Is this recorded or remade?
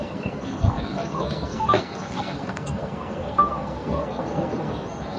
remade